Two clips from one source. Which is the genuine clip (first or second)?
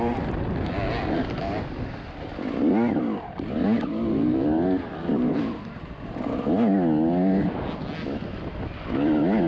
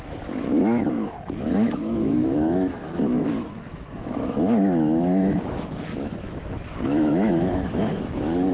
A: first